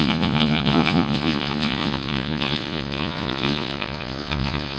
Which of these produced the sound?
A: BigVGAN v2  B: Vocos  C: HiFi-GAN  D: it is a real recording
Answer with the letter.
B